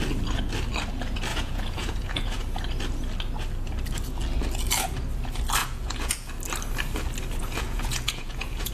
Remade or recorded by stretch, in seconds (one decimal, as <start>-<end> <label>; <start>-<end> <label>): 0.0-1.3 recorded; 1.3-2.4 remade; 2.4-5.6 recorded; 5.6-6.3 remade; 6.3-7.4 recorded; 7.4-8.7 remade